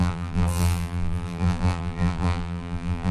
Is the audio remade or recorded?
remade